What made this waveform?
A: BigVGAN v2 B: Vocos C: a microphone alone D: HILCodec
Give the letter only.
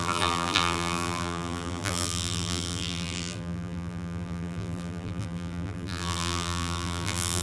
A